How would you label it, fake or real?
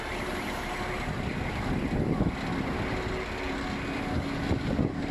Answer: real